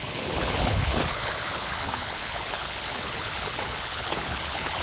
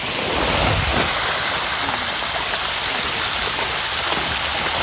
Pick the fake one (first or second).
first